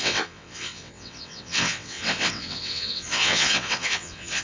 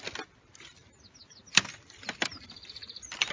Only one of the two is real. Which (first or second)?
second